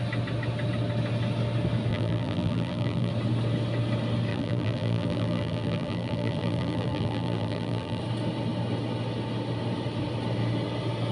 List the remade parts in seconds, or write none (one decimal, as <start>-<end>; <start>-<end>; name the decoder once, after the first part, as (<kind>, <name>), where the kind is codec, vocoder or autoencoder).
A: 1.9-3.1 (vocoder, BigVGAN v2); 4.3-8.0